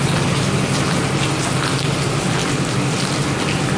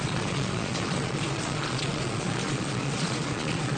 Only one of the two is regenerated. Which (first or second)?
second